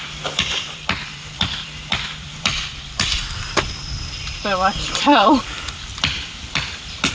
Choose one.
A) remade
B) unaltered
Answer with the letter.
A